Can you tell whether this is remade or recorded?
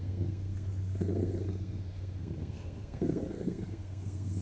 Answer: remade